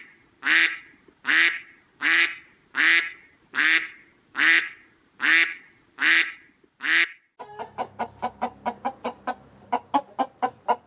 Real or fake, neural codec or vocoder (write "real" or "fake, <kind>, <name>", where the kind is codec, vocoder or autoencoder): real